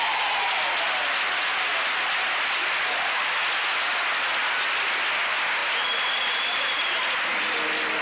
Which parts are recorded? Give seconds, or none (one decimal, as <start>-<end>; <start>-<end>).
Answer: 1.8-5.6; 6.8-8.0